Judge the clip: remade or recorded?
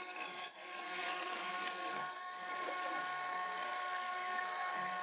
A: remade